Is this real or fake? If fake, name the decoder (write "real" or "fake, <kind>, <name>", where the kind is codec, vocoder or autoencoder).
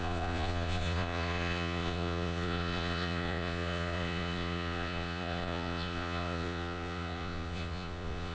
fake, vocoder, Vocos